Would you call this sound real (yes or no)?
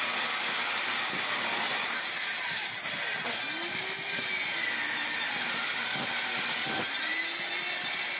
yes